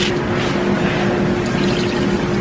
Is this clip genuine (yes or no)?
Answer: yes